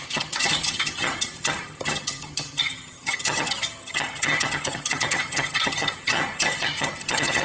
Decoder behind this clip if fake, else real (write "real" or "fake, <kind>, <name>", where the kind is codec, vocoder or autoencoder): fake, vocoder, HiFi-GAN